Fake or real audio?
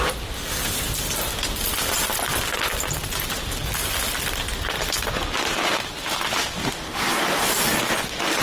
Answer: real